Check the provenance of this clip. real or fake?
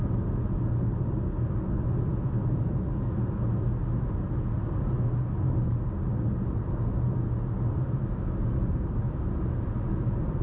real